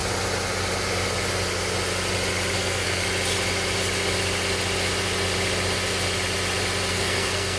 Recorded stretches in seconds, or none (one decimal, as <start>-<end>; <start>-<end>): 0.0-2.6; 3.0-6.9